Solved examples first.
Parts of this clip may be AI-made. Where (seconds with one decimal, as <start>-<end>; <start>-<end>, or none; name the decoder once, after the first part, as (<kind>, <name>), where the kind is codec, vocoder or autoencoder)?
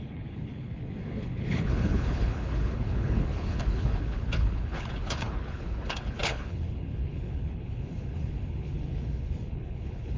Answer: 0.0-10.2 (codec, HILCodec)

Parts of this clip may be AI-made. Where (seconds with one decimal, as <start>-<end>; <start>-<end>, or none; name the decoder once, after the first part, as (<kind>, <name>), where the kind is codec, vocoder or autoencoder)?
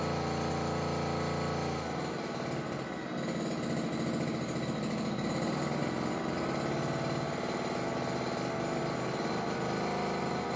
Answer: none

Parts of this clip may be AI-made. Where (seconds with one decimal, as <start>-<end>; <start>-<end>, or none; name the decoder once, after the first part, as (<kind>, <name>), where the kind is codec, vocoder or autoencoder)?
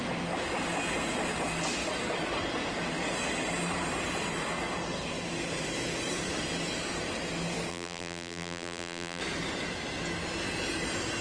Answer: 7.7-9.2 (vocoder, BigVGAN v2)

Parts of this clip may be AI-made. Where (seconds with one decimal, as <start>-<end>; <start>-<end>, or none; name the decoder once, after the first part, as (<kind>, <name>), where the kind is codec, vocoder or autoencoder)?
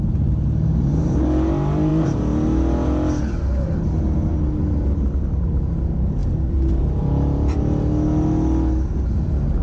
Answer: 6.2-7.6 (vocoder, BigVGAN v2)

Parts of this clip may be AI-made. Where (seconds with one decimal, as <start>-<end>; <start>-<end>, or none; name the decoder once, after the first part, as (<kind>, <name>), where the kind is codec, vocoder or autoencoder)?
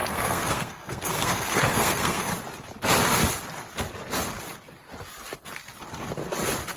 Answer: 0.0-2.3 (codec, SNAC)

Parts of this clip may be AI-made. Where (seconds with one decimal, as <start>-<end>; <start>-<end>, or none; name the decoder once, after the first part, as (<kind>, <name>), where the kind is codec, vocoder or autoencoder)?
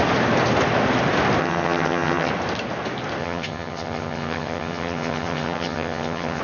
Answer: 1.4-2.3 (vocoder, HiFi-GAN); 3.2-6.4